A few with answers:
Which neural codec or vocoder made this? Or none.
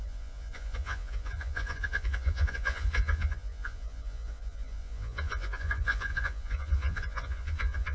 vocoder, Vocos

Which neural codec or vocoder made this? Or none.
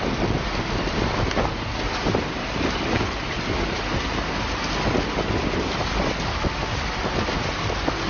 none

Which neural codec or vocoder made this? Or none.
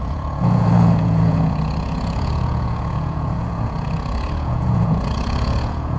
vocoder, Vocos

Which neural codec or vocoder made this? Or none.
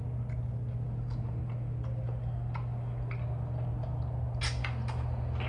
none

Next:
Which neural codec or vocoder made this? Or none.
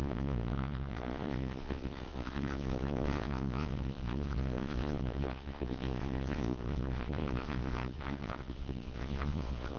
vocoder, Vocos